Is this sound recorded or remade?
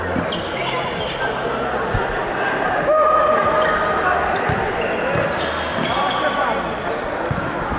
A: recorded